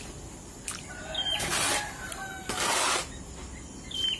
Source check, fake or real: real